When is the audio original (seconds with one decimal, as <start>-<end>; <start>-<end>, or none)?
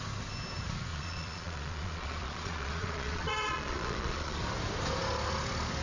0.0-0.9; 4.4-5.8